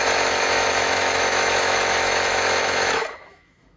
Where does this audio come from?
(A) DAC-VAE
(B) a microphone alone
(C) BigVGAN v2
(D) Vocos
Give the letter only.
A